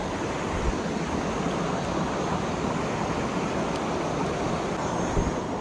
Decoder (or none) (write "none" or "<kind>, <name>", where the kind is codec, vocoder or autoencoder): none